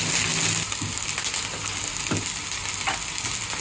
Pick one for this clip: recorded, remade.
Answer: recorded